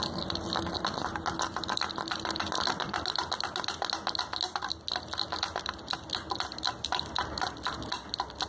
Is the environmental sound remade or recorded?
recorded